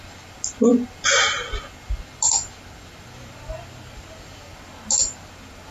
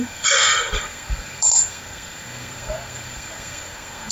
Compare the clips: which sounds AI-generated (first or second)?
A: second